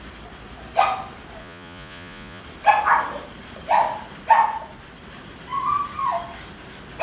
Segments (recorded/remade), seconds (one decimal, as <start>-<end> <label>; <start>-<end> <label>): 0.0-1.4 recorded; 1.4-2.4 remade; 2.4-7.0 recorded